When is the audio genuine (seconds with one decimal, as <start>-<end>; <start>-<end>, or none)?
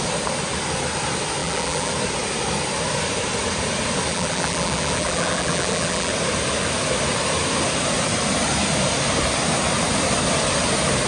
0.0-1.4; 1.9-4.1; 6.1-11.1